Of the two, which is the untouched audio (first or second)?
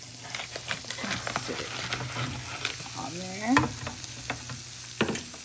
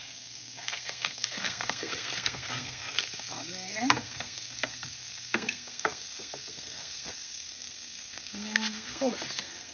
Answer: first